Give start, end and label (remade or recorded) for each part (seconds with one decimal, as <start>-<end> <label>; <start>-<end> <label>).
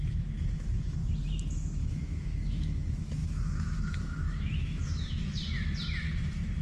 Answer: 0.0-1.0 remade; 1.0-1.5 recorded; 1.5-5.4 remade; 5.4-6.0 recorded; 6.0-6.6 remade